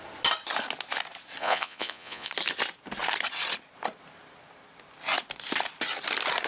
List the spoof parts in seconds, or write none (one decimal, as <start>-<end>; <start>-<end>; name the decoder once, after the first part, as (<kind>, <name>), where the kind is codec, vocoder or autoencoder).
1.4-2.3 (vocoder, Vocos)